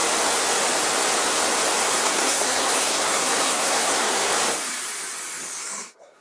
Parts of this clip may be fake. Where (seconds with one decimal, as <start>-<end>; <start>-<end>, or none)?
1.8-4.3; 5.6-6.2